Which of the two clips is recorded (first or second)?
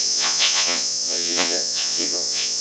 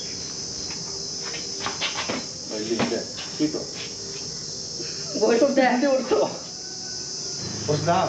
second